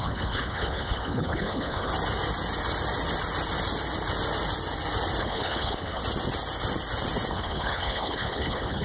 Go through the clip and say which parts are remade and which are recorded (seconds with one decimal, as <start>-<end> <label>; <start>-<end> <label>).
0.0-1.9 remade; 1.9-5.2 recorded; 5.2-6.0 remade; 6.0-7.3 recorded; 7.3-8.8 remade